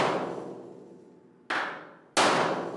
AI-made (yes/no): no